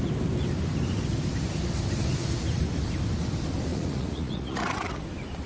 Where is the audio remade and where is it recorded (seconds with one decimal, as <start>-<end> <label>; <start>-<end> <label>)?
0.0-3.7 recorded; 3.7-5.0 remade; 5.0-5.5 recorded